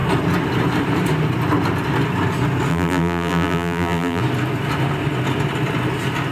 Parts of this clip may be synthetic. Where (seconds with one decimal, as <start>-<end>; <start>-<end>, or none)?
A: 2.7-4.2